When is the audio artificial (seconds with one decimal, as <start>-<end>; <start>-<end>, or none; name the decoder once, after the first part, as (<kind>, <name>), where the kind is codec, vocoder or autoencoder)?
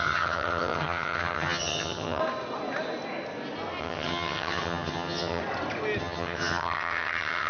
0.0-2.2 (vocoder, HiFi-GAN); 3.8-5.4; 6.0-7.5